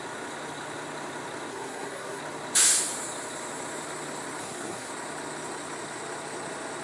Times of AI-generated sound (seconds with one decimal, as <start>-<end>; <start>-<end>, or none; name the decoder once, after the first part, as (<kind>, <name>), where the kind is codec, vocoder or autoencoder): 1.5-2.2 (codec, SNAC); 4.4-4.9